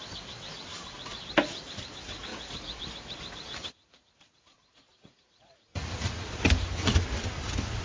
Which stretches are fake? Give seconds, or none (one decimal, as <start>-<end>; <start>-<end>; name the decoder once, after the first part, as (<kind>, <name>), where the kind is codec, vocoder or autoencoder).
2.3-6.3 (vocoder, Vocos)